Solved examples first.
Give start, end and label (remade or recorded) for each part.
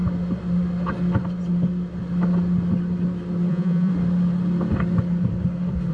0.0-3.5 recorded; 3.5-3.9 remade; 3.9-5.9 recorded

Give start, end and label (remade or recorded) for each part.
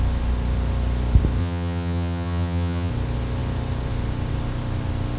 0.0-1.4 recorded; 1.4-2.9 remade; 2.9-5.2 recorded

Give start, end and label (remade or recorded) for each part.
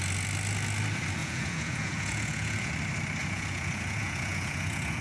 0.0-1.2 recorded; 1.2-2.7 remade; 2.7-3.2 recorded; 3.2-5.0 remade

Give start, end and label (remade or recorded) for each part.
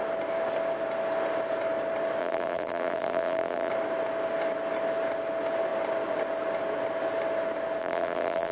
0.0-2.2 recorded; 2.2-3.7 remade; 3.7-7.8 recorded; 7.8-8.5 remade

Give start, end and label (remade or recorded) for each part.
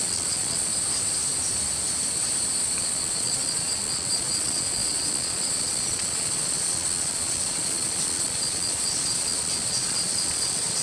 0.0-0.7 remade; 0.7-2.8 recorded; 2.8-10.8 remade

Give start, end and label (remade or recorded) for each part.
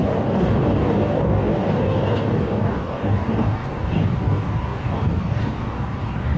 0.0-6.4 remade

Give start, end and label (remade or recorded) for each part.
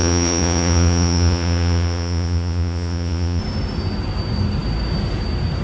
0.0-3.4 remade; 3.4-5.6 recorded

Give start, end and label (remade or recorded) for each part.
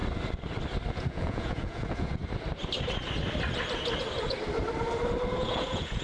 0.0-0.9 recorded; 0.9-2.2 remade; 2.2-5.4 recorded; 5.4-6.0 remade